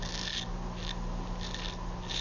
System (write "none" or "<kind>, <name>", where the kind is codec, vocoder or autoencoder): none